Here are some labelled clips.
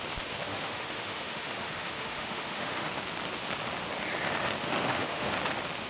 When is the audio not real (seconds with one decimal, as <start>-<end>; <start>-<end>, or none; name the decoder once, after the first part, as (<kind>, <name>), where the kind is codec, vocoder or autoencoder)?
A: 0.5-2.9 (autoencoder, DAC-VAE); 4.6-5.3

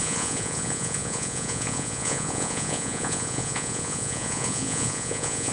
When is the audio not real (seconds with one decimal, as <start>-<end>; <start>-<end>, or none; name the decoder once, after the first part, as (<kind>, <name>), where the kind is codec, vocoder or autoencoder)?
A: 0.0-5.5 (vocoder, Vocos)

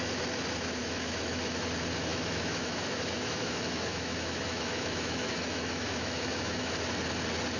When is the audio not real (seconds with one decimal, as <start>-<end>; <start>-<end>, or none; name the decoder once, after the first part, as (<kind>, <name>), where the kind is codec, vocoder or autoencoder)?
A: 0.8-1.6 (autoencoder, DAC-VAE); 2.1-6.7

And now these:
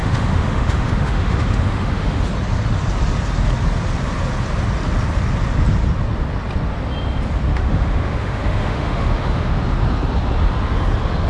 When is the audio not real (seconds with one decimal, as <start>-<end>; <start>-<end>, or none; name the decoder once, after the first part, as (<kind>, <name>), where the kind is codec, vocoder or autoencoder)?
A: 0.0-2.2 (autoencoder, DAC-VAE); 7.5-9.6